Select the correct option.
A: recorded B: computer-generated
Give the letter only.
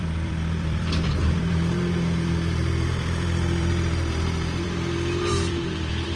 B